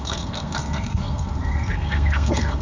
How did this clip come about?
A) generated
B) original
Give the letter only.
A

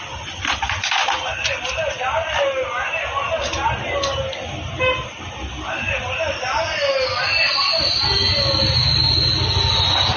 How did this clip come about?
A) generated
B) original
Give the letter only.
B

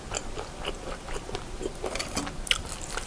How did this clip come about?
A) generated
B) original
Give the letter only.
B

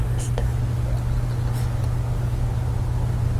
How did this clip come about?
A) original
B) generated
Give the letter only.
A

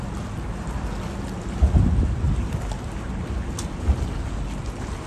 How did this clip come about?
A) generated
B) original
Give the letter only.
B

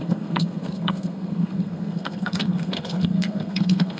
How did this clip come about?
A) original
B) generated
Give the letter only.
B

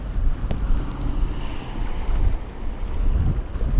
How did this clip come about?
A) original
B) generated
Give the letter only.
A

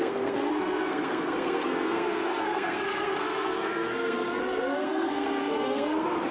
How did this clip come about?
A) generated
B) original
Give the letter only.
A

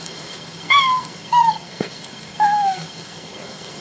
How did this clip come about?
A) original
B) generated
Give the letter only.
B